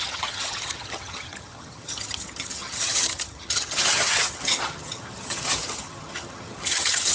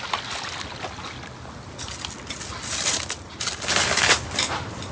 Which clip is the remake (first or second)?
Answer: first